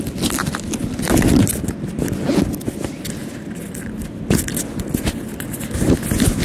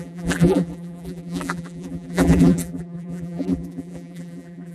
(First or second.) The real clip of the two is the first